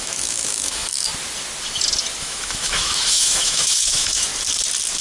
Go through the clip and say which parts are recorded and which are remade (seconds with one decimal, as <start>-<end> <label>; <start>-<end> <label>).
0.0-1.1 remade; 1.1-2.2 recorded; 2.2-4.3 remade; 4.3-5.0 recorded